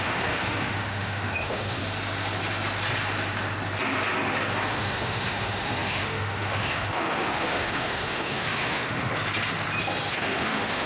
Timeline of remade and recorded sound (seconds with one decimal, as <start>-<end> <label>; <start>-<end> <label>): 0.0-1.8 remade; 1.8-4.7 recorded; 4.7-9.1 remade; 9.1-10.1 recorded; 10.1-10.9 remade